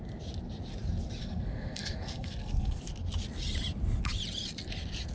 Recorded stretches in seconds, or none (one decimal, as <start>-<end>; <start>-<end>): 0.0-1.2; 2.8-5.1